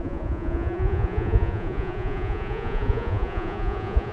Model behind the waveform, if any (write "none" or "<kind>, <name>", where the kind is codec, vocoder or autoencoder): vocoder, Vocos